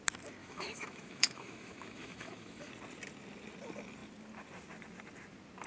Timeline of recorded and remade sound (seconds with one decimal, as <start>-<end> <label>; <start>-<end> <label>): 0.0-0.4 recorded; 0.4-2.7 remade; 2.7-5.7 recorded